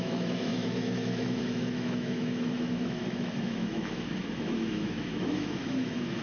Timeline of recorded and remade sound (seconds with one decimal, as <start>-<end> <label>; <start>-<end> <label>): 0.0-6.2 remade